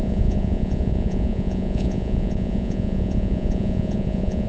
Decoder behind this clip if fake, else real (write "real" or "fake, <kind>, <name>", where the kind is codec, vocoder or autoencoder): fake, vocoder, Vocos